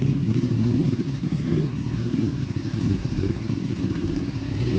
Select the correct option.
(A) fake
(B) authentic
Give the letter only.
A